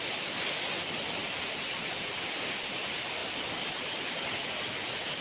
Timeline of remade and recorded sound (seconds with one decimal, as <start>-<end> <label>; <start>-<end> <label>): 0.0-5.2 recorded